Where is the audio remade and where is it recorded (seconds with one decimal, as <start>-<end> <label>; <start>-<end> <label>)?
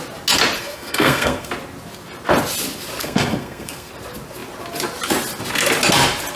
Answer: 0.0-0.6 recorded; 0.6-1.5 remade; 1.5-3.0 recorded; 3.0-3.9 remade; 3.9-6.4 recorded